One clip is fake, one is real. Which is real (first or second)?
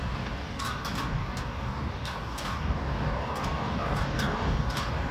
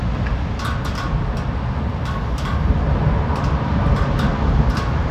second